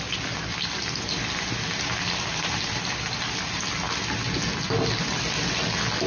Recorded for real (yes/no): yes